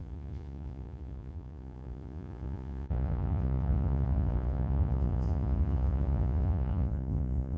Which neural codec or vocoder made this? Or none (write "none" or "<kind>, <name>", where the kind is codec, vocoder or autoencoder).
vocoder, Vocos